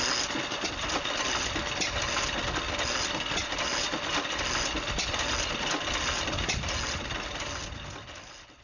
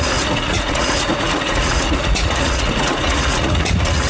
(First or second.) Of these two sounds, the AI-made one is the second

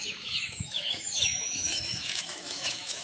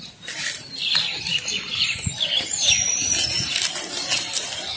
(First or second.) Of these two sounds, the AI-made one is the first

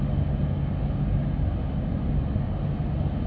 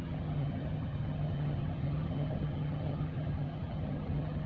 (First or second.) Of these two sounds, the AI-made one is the second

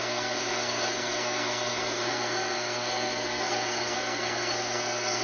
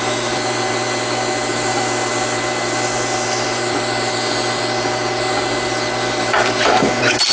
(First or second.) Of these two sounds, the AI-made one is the first